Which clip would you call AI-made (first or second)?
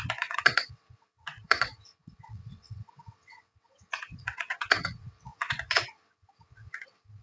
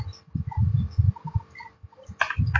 first